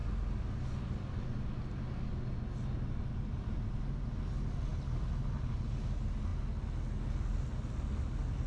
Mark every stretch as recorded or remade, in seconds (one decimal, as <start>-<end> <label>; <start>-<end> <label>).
0.0-8.5 recorded